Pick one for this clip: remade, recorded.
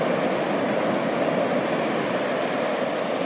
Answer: recorded